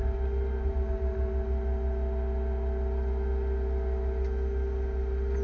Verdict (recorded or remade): recorded